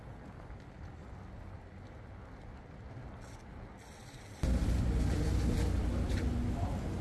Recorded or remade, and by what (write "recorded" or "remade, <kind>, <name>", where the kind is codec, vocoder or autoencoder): recorded